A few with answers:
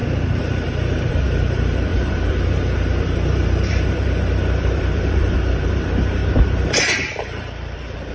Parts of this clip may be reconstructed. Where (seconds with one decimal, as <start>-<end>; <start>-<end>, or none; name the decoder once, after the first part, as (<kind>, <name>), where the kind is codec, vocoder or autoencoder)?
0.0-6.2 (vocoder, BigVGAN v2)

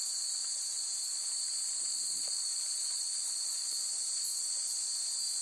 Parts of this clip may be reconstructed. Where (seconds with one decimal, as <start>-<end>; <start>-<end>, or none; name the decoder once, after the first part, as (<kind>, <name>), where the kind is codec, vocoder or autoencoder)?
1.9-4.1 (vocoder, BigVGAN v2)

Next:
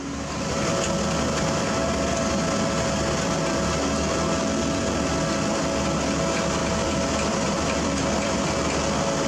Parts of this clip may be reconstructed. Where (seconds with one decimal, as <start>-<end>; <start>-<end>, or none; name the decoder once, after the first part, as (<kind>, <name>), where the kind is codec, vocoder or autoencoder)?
6.6-8.4 (vocoder, BigVGAN v2)

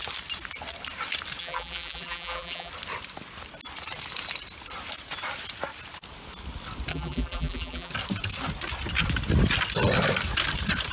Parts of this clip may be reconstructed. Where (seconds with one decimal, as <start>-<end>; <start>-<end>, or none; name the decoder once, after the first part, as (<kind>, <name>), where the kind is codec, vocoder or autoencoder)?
1.4-2.7 (vocoder, BigVGAN v2); 6.9-7.9

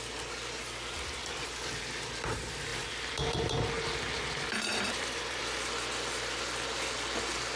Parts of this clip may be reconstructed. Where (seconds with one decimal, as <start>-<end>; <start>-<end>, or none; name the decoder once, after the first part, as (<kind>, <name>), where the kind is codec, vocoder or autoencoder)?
1.2-1.8 (vocoder, BigVGAN v2); 2.7-3.7; 4.7-5.4

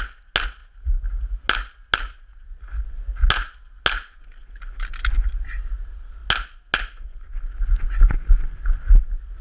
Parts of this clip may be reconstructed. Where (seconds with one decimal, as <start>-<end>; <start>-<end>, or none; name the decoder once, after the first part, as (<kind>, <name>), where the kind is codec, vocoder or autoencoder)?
none

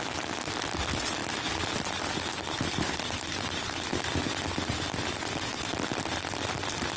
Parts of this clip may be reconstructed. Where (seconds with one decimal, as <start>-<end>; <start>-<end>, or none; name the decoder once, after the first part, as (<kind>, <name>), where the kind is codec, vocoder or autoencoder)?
none

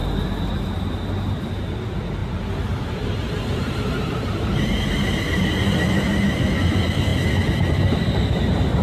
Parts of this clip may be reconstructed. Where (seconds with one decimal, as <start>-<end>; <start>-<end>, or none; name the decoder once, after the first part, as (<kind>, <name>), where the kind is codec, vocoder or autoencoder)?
2.2-5.1 (vocoder, BigVGAN v2)